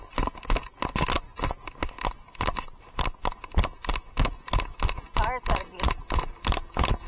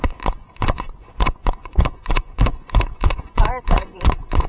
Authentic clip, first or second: first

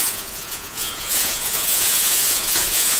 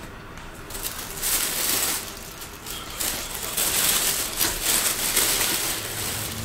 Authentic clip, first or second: second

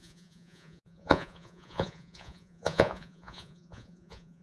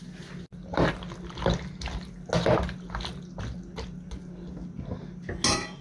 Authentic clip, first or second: second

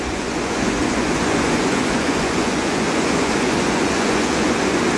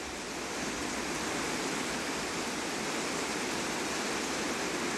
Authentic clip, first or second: second